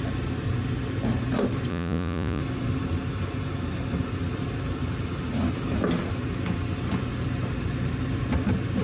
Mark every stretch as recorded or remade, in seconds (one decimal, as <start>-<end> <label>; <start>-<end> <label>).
0.0-1.7 recorded; 1.7-2.4 remade; 2.4-8.8 recorded